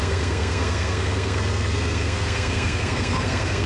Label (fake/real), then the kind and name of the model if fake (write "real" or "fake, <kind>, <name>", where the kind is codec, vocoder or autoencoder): fake, codec, SNAC